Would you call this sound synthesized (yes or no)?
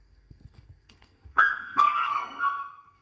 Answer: yes